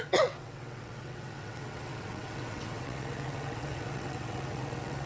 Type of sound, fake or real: fake